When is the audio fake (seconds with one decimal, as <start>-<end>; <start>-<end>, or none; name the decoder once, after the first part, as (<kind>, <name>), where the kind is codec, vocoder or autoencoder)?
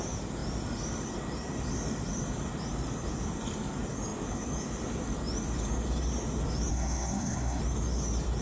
6.7-7.6 (codec, SNAC)